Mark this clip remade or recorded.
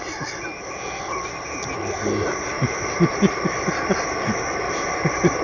recorded